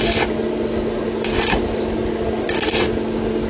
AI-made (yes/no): no